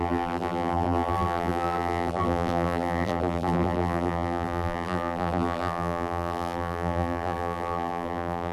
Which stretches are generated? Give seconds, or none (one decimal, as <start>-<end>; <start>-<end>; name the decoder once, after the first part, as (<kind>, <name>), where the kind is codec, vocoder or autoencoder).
0.0-8.5 (vocoder, BigVGAN v2)